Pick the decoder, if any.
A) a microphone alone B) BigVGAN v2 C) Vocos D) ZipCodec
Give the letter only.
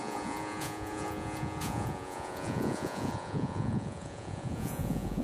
C